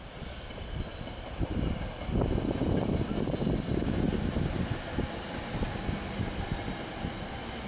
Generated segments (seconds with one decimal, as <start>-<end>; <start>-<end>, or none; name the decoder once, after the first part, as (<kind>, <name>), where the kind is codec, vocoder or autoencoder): none